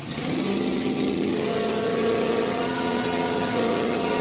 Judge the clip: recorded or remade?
remade